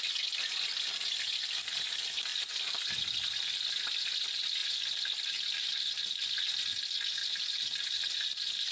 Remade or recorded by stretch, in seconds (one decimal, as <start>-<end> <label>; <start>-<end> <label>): 0.0-4.6 recorded; 4.6-5.9 remade; 5.9-7.2 recorded; 7.2-8.7 remade